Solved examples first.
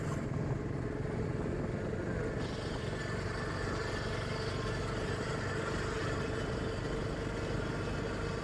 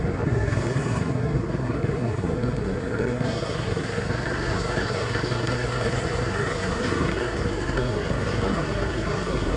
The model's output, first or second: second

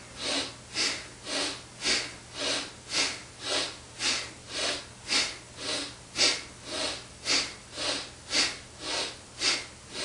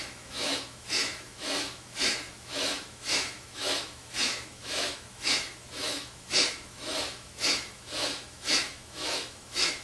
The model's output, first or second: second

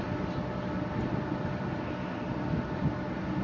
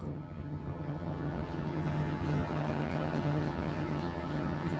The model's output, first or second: second